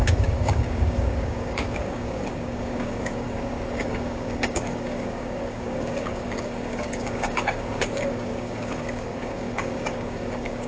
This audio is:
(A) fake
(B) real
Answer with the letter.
A